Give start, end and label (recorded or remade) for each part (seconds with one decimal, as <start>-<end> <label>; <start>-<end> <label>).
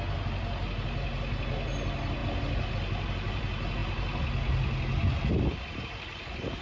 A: 0.0-6.6 recorded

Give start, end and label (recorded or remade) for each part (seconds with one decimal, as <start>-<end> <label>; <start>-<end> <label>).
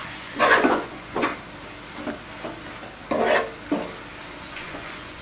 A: 0.0-1.3 remade; 1.3-4.4 recorded; 4.4-5.2 remade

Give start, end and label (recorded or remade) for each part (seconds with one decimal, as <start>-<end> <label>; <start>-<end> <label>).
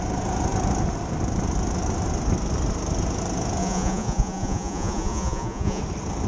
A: 0.0-3.6 recorded; 3.6-5.8 remade; 5.8-6.3 recorded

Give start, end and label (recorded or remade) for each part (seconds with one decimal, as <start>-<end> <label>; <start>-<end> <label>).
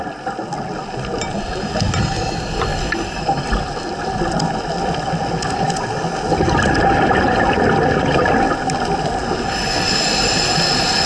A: 0.0-11.1 recorded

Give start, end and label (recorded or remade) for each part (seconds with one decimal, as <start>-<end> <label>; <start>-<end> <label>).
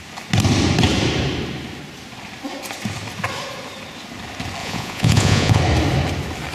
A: 0.0-4.6 recorded; 4.6-5.6 remade; 5.6-6.5 recorded